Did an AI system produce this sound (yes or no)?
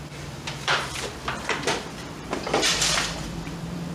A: yes